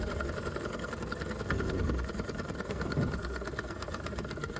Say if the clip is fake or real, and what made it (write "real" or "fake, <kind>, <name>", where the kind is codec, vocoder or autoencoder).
fake, codec, SNAC